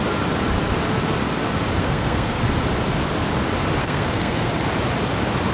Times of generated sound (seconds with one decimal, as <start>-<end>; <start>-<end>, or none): 1.8-2.4; 3.8-4.5